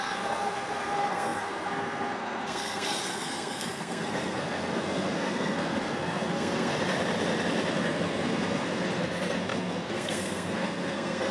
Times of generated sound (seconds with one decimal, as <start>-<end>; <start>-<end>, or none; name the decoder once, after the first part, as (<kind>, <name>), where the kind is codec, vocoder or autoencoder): 0.0-6.7 (codec, SNAC); 7.7-11.3